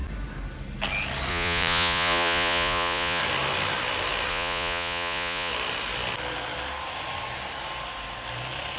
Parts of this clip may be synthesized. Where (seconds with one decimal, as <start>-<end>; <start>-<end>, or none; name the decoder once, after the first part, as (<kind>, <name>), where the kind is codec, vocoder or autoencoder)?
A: 1.3-3.2 (vocoder, Vocos); 4.3-5.5